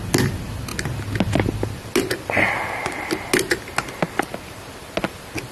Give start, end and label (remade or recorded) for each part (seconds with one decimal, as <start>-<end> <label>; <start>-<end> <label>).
0.0-5.5 recorded